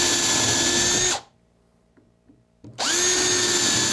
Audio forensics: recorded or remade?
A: recorded